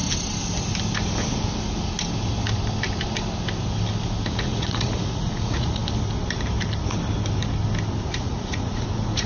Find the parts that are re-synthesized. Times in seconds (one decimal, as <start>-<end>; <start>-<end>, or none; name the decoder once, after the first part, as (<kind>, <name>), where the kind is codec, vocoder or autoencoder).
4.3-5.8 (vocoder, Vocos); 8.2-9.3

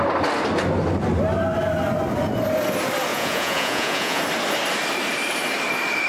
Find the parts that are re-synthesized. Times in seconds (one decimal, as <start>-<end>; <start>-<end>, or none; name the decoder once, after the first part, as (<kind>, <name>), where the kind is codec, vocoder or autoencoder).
3.1-4.2 (vocoder, Vocos)

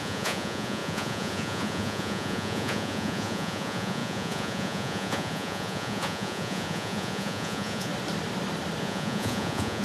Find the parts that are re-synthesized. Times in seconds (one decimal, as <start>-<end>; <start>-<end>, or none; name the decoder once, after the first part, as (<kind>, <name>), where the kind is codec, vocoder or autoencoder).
0.0-7.9 (vocoder, Vocos); 8.8-9.8

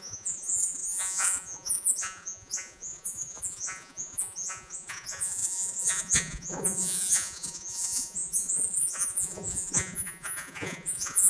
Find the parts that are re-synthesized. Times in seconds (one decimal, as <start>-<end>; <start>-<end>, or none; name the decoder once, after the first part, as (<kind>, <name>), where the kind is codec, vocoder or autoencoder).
0.0-11.3 (vocoder, Vocos)

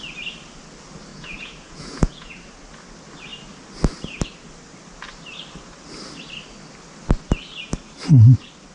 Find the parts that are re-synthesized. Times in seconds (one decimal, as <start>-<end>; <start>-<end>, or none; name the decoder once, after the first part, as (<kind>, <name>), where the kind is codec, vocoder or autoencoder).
1.1-2.4 (vocoder, Vocos)

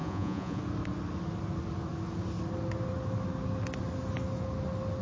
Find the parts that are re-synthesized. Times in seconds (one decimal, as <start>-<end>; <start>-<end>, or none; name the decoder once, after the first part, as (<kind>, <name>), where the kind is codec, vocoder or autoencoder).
0.0-0.6 (vocoder, Vocos)